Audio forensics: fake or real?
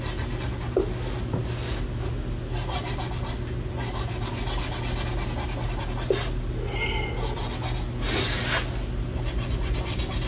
real